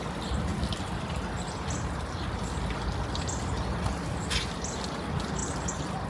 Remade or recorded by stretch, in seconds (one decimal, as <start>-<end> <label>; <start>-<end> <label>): 0.0-6.1 recorded